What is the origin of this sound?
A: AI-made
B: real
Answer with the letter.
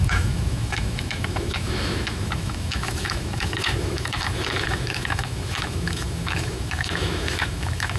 A